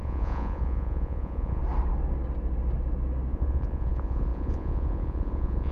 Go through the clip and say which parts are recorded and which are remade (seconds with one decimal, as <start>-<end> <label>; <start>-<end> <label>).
0.0-1.6 remade; 1.6-3.3 recorded; 3.3-5.7 remade